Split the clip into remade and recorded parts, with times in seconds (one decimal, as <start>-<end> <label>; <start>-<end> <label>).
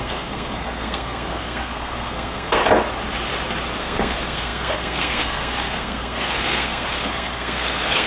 0.0-2.6 remade; 2.6-3.8 recorded; 3.8-8.1 remade